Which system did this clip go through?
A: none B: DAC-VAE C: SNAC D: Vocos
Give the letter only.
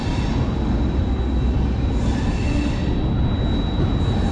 A